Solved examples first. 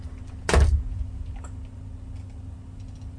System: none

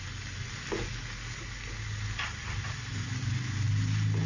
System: none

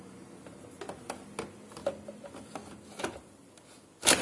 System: none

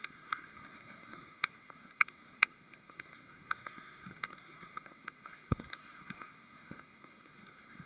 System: codec, SNAC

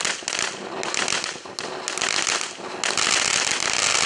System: none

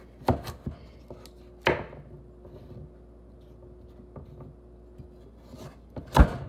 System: none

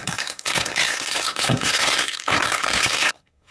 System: codec, SNAC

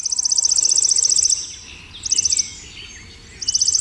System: none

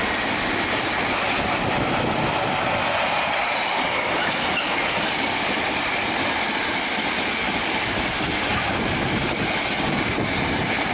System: none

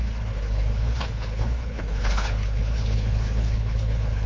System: codec, HILCodec